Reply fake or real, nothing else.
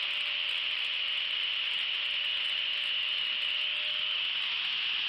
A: real